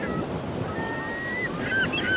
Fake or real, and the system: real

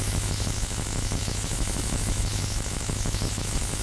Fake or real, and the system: fake, autoencoder, DAC-VAE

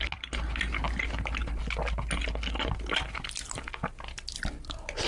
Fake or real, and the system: real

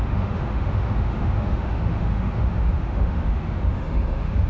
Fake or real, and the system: fake, autoencoder, DAC-VAE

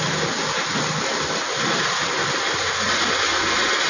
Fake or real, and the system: real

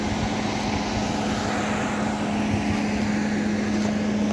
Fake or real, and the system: real